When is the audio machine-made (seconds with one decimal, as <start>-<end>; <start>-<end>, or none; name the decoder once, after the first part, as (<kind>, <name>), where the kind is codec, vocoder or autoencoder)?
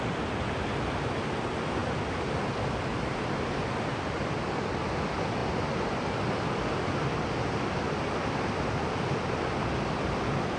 none